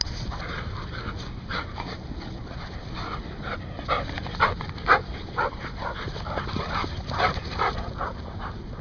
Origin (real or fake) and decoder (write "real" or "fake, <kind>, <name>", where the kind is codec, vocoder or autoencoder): real